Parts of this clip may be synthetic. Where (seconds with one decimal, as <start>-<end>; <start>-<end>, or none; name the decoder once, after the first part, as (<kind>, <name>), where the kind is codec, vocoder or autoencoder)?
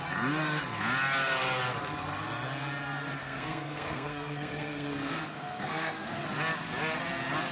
3.2-6.2 (codec, SNAC)